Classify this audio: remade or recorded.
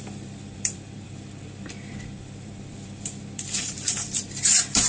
remade